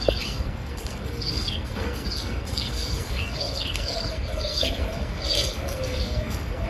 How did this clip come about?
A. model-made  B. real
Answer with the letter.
A